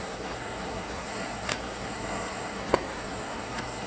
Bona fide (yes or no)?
no